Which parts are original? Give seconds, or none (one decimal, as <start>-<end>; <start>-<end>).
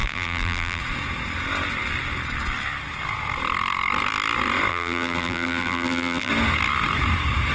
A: 0.8-4.7; 6.3-7.5